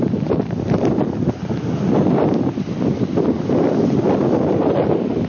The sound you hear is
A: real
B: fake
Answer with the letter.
A